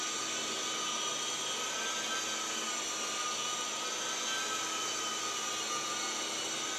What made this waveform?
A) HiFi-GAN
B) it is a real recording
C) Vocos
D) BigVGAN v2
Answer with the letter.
B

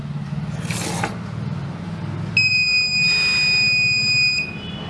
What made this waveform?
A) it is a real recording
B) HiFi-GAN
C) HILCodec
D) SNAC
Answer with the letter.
A